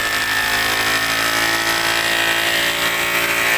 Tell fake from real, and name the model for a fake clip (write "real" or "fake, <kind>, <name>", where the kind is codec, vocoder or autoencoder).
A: real